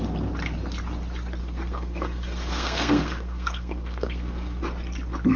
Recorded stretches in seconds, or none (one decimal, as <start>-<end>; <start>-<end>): 0.0-1.4; 4.6-5.4